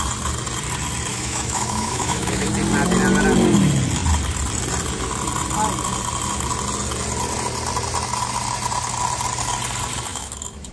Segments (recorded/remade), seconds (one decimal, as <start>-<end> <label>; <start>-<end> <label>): 0.0-1.1 recorded; 1.1-2.5 remade; 2.5-10.1 recorded; 10.1-10.7 remade